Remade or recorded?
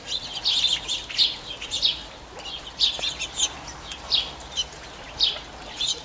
recorded